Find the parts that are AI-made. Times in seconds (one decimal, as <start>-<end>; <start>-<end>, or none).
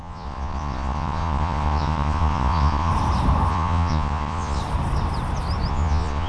0.0-2.9; 3.5-4.6; 5.7-6.3